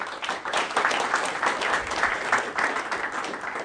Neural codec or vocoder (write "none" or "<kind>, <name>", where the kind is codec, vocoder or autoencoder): none